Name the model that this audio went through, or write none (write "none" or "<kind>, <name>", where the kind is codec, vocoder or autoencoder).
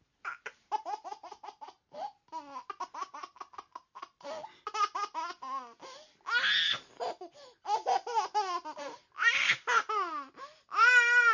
none